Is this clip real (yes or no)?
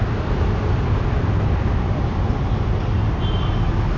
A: yes